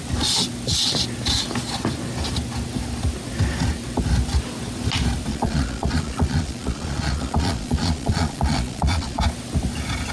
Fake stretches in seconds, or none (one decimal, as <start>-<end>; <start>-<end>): 5.3-9.2